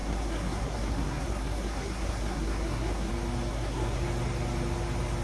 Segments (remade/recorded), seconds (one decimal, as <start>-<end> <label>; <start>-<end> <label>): 0.0-3.1 remade; 3.1-3.5 recorded; 3.5-4.0 remade; 4.0-5.2 recorded